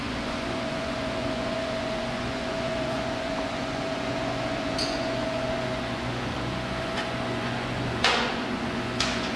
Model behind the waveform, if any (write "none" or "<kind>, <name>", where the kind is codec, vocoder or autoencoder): vocoder, Vocos